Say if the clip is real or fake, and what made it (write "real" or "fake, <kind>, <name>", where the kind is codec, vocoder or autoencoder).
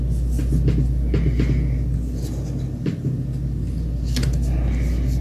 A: real